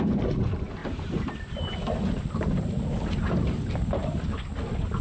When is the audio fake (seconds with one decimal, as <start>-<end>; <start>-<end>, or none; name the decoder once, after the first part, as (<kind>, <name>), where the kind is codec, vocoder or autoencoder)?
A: none